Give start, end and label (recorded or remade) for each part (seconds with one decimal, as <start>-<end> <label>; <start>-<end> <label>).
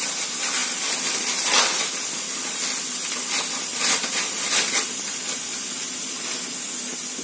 0.0-7.2 recorded